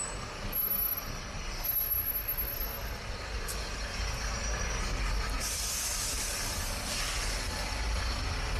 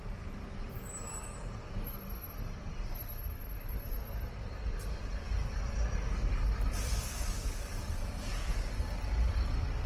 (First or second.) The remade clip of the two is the second